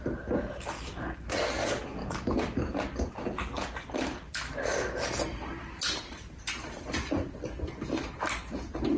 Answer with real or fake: real